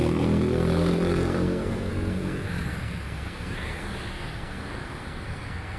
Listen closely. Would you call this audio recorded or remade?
remade